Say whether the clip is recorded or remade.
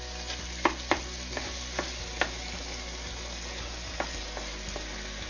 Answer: recorded